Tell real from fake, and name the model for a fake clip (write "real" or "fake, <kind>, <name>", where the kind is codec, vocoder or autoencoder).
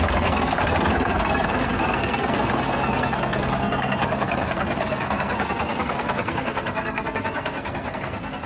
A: fake, codec, SNAC